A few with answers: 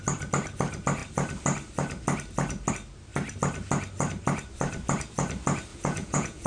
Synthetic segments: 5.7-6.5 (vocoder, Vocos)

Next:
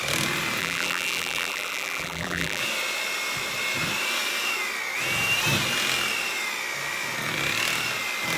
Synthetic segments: 0.6-2.6 (vocoder, BigVGAN v2)

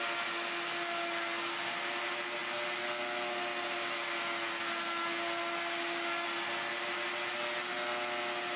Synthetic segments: none

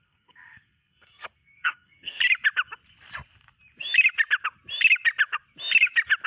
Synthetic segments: 0.0-2.2 (codec, SNAC)

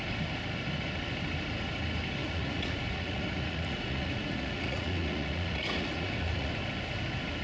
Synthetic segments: 2.2-6.5 (vocoder, Vocos)

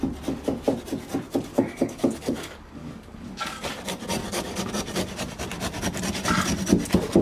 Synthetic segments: 1.5-3.6 (codec, DAC); 4.2-4.7

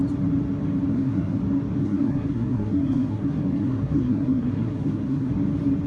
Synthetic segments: 0.9-1.4 (codec, SNAC); 1.8-5.3